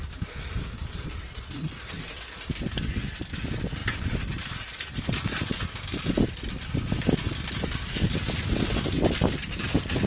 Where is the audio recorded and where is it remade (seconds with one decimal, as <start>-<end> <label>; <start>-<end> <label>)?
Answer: 0.0-10.1 recorded